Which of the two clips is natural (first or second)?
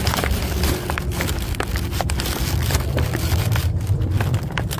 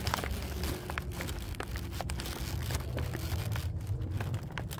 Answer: second